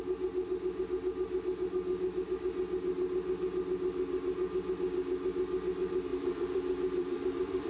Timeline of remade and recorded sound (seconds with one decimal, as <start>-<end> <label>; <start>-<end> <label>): 0.0-6.1 recorded; 6.1-7.7 remade